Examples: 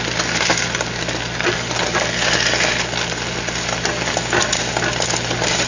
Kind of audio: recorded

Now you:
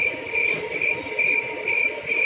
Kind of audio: recorded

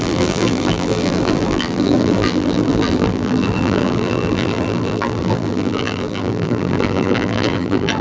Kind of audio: remade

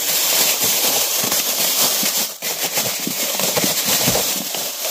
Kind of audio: remade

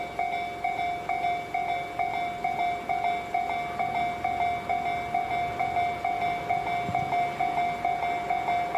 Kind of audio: recorded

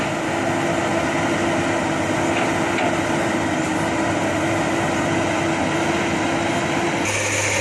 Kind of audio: recorded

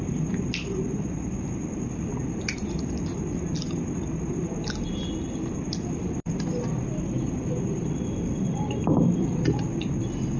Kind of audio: recorded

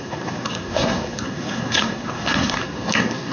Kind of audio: remade